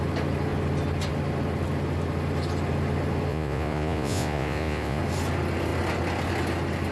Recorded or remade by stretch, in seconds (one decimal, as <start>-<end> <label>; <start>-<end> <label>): 0.0-3.3 recorded; 3.3-5.0 remade; 5.0-6.9 recorded